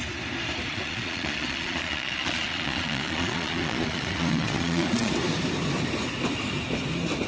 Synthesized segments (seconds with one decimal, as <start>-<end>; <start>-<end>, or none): 0.7-5.1